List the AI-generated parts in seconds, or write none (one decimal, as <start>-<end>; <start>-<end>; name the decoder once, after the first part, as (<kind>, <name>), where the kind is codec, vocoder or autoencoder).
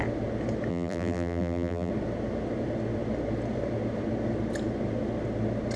0.7-1.9 (vocoder, BigVGAN v2)